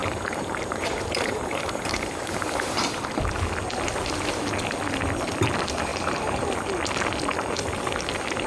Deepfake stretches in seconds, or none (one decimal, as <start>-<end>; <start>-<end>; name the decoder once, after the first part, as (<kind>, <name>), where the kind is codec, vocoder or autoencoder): 0.0-3.1 (vocoder, BigVGAN v2); 5.9-6.4